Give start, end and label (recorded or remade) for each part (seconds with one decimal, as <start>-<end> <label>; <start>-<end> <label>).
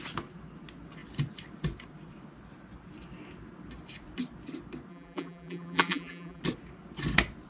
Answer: 0.0-4.9 recorded; 4.9-6.4 remade; 6.4-7.5 recorded